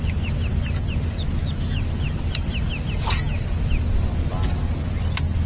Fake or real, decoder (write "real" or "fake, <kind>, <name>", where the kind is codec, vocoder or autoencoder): real